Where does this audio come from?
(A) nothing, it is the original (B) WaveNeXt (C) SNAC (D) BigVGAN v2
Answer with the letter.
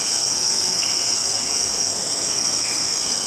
C